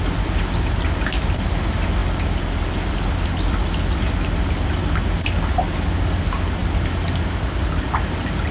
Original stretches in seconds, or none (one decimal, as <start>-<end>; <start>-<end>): 0.0-8.5